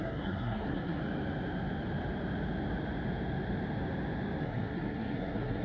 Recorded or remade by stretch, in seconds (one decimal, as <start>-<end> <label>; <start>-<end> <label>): 0.0-1.0 remade; 1.0-4.4 recorded; 4.4-5.6 remade